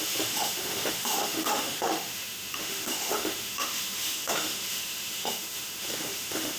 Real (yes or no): no